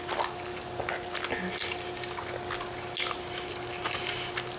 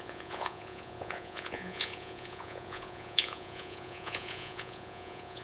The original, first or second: first